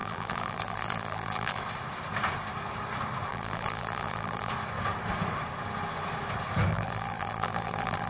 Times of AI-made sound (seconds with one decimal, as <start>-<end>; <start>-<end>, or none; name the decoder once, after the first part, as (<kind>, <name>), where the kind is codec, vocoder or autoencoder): 0.0-1.6 (vocoder, BigVGAN v2); 3.3-4.5; 6.7-8.1